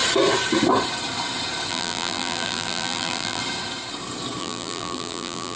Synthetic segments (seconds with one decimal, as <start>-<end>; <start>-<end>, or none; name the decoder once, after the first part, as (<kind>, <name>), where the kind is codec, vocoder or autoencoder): 1.7-3.4 (vocoder, BigVGAN v2); 4.4-5.6